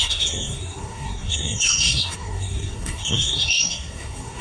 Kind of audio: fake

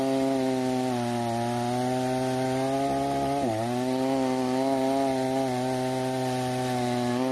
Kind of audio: real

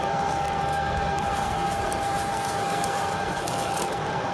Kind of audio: fake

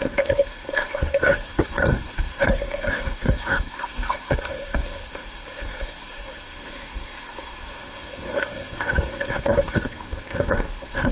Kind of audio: fake